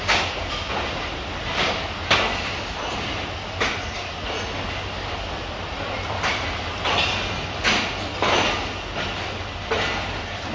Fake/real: real